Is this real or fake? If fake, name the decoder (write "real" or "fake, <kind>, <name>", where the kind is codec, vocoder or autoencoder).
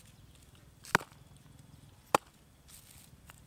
real